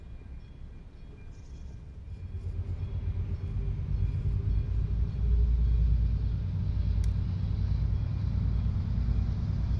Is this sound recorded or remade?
recorded